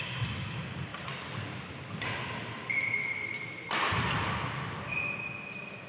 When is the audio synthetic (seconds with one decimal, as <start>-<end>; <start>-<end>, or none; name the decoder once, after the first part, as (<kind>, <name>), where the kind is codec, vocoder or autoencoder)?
none

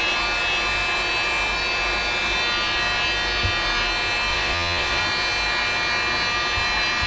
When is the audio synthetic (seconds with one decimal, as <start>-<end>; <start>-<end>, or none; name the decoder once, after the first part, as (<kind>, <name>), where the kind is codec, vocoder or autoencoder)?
4.3-5.0 (vocoder, Vocos)

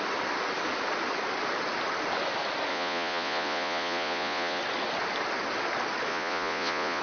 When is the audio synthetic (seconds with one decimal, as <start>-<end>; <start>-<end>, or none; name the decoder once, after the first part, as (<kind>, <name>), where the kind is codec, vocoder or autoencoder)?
2.7-4.6 (vocoder, Vocos); 6.1-7.0